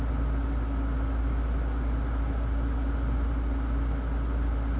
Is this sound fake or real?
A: real